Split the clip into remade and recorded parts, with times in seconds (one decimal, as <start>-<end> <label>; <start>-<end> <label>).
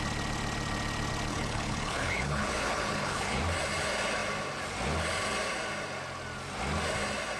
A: 0.0-1.3 recorded; 1.3-3.4 remade; 3.4-7.4 recorded